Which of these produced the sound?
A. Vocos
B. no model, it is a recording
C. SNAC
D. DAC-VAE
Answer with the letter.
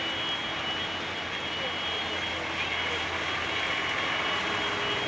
B